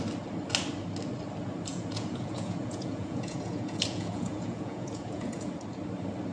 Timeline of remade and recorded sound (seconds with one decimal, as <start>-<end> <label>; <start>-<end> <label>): 0.0-1.7 recorded; 1.7-5.5 remade; 5.5-6.3 recorded